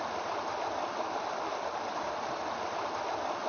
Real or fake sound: real